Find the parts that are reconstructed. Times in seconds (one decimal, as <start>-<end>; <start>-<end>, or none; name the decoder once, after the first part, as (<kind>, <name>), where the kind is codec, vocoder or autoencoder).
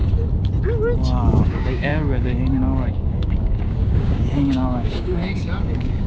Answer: 1.3-6.1 (codec, DAC)